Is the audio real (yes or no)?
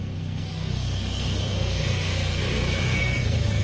no